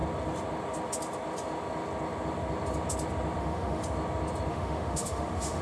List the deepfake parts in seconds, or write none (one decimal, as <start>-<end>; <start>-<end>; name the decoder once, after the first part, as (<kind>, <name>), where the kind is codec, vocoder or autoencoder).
3.4-3.8 (autoencoder, DAC-VAE); 4.5-5.6